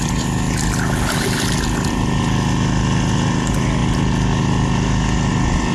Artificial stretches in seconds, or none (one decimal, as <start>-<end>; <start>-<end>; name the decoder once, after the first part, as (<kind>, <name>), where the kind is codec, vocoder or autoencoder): none

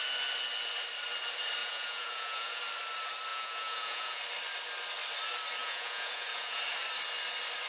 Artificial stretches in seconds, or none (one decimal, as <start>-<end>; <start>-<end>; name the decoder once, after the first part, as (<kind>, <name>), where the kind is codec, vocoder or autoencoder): 1.6-2.6 (vocoder, Vocos); 3.3-4.2; 5.6-6.6

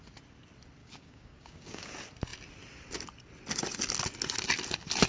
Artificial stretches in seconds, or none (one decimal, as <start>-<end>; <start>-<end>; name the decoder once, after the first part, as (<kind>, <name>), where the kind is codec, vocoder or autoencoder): 0.8-1.9 (codec, DAC)

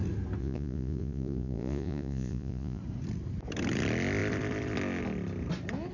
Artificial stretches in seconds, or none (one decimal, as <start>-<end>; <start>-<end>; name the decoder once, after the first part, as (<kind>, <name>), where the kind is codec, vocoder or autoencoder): 0.4-2.8 (vocoder, Vocos)

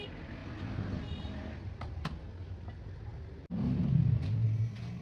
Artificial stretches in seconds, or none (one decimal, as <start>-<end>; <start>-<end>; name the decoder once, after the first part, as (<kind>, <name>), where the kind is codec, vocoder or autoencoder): none

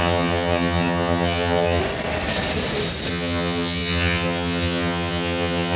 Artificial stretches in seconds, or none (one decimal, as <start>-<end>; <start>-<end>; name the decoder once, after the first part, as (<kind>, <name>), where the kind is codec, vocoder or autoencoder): 0.0-1.8 (vocoder, HiFi-GAN); 3.1-5.8

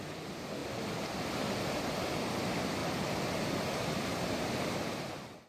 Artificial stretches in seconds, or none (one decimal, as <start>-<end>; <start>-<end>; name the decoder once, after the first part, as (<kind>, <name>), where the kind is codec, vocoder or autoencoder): none